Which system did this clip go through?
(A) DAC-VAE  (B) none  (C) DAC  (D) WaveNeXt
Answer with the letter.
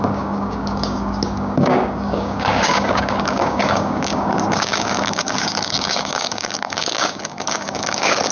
C